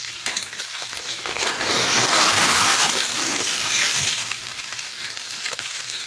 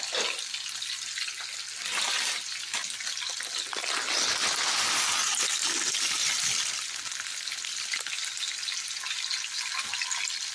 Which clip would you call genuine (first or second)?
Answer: second